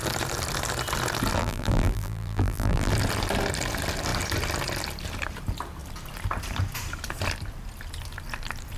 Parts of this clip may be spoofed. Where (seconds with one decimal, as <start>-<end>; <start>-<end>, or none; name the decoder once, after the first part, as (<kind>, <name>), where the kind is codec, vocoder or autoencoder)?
1.4-2.9 (vocoder, BigVGAN v2)